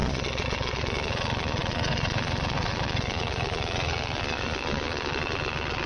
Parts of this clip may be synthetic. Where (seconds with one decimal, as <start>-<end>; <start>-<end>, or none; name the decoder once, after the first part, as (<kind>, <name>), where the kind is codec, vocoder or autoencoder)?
0.0-5.9 (vocoder, Vocos)